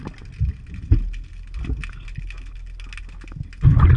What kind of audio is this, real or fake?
real